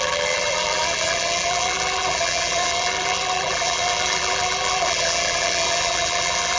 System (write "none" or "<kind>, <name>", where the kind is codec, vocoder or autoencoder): vocoder, BigVGAN v2